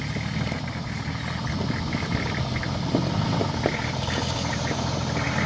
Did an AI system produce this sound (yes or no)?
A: no